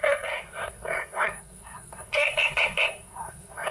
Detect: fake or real fake